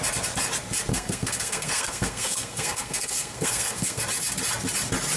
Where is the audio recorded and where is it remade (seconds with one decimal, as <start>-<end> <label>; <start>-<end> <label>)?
0.0-0.9 recorded; 0.9-4.0 remade; 4.0-5.2 recorded